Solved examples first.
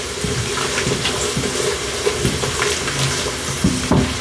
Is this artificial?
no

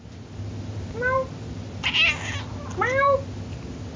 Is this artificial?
no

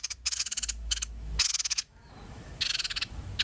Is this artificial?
yes